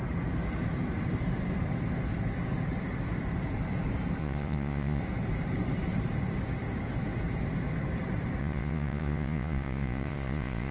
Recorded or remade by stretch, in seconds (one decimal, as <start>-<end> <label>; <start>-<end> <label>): 0.0-4.2 recorded; 4.2-5.0 remade; 5.0-8.4 recorded; 8.4-10.7 remade